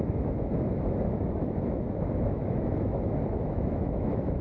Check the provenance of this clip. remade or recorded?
remade